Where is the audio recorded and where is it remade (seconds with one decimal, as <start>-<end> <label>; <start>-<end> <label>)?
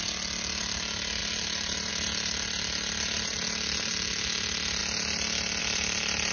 0.0-1.2 recorded; 1.2-1.9 remade; 1.9-6.3 recorded